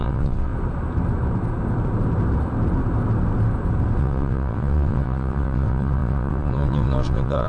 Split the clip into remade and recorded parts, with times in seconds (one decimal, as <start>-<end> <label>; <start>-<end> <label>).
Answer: 0.0-0.5 remade; 0.5-4.0 recorded; 4.0-7.5 remade